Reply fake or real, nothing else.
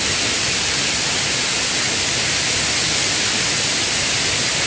real